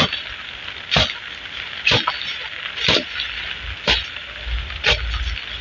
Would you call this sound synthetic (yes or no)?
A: no